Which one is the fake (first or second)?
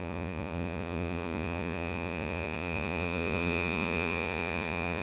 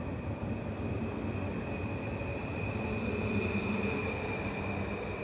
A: first